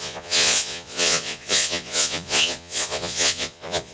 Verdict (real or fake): fake